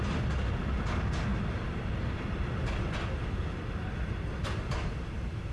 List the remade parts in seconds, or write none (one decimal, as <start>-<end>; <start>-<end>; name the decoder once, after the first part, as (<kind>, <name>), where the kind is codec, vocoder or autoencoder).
none